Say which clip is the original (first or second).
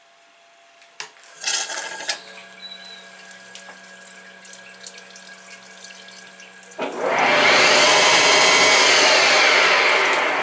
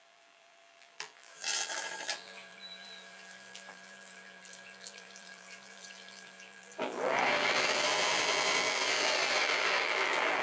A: first